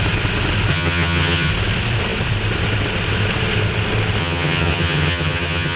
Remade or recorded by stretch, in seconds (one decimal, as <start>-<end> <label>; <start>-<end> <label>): 0.0-0.7 recorded; 0.7-1.5 remade; 1.5-4.2 recorded; 4.2-5.8 remade